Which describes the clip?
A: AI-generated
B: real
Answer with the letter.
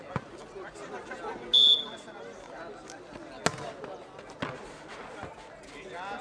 B